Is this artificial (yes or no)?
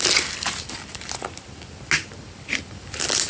no